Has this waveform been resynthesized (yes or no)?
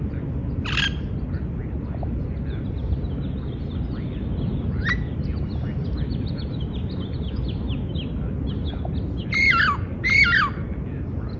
no